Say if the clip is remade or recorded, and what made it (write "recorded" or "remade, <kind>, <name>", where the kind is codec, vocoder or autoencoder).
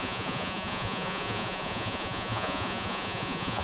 remade, vocoder, Vocos